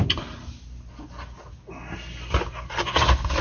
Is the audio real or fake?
real